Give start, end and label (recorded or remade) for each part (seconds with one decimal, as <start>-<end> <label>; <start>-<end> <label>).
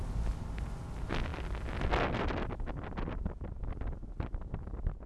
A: 0.0-5.1 recorded